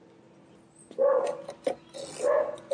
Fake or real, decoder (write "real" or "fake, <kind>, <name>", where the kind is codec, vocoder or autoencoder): real